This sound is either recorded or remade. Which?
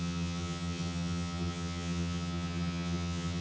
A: remade